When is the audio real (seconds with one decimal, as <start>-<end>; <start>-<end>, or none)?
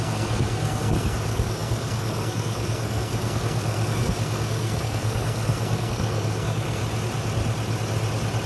6.8-8.5